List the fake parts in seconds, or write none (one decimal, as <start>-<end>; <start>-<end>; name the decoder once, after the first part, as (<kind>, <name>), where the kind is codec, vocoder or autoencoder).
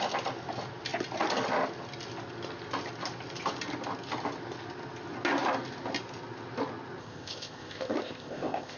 7.0-8.8 (codec, ZipCodec)